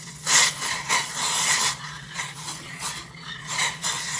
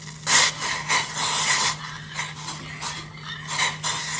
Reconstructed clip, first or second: first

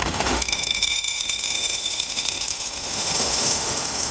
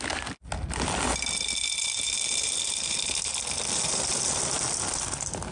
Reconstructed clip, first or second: first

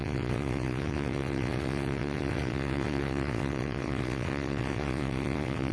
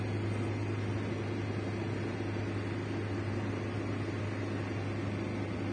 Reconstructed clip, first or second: first